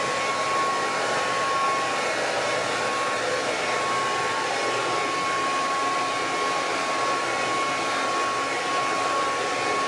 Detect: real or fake real